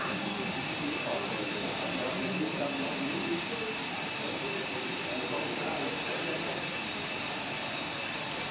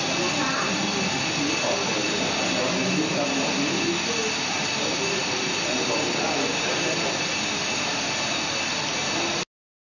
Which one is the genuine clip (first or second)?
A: second